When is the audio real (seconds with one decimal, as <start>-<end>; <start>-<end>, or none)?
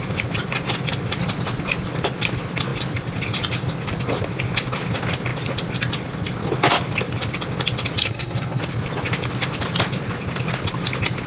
0.0-8.0; 8.6-11.3